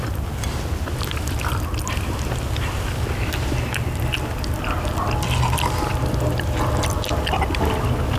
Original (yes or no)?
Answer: yes